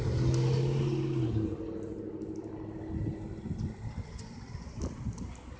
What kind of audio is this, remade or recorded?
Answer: recorded